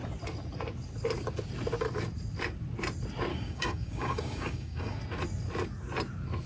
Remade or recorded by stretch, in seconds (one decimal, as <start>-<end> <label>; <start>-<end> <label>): 0.0-3.3 recorded; 3.3-5.0 remade; 5.0-6.5 recorded